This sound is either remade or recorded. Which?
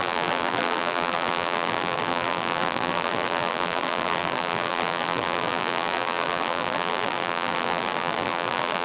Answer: remade